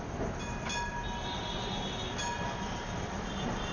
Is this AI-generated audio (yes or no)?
no